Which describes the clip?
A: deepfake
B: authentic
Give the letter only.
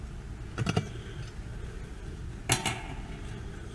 B